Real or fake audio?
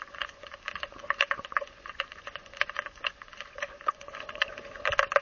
fake